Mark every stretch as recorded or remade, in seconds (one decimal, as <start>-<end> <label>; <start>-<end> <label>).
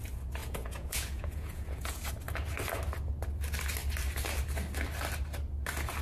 0.0-0.4 recorded; 0.4-2.1 remade; 2.1-6.0 recorded